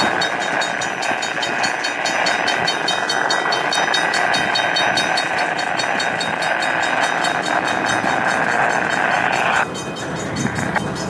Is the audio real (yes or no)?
yes